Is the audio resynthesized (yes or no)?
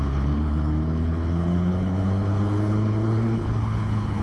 yes